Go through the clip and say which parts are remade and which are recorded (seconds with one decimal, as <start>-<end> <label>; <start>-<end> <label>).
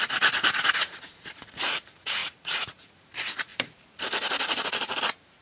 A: 0.0-5.4 remade